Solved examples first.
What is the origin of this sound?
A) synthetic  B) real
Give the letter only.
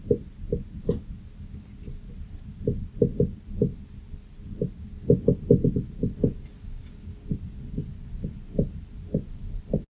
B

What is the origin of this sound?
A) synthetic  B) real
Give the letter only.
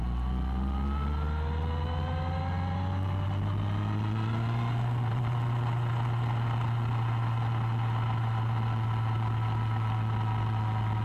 B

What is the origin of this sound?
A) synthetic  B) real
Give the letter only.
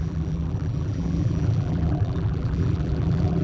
A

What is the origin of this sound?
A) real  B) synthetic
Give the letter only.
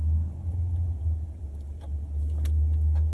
A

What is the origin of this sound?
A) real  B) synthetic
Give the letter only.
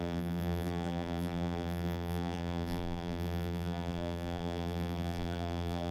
B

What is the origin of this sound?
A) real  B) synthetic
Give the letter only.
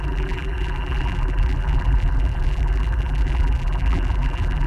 B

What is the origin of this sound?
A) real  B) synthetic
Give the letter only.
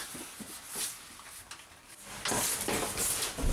A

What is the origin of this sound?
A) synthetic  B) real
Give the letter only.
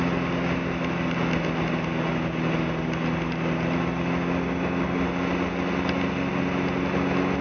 B